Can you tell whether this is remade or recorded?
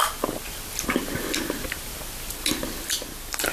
recorded